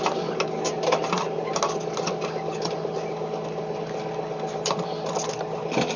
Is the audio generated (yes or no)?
no